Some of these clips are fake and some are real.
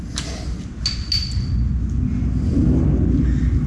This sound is real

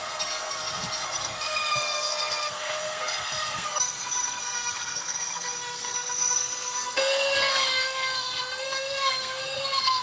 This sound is fake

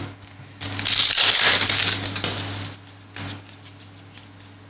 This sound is real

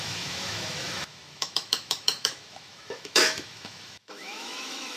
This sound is fake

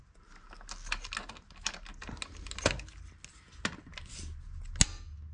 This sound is real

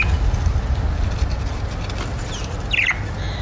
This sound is real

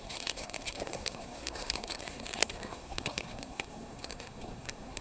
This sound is fake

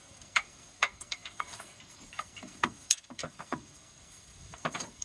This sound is fake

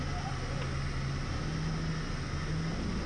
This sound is real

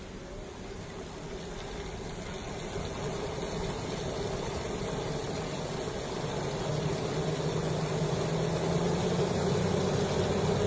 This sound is real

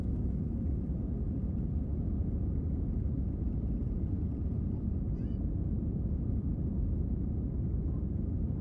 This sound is fake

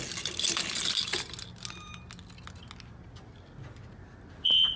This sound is real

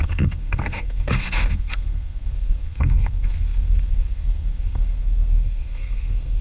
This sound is fake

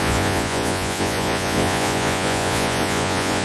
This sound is fake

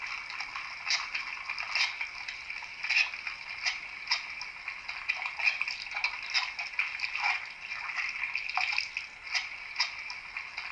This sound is real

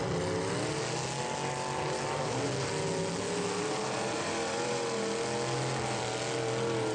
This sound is real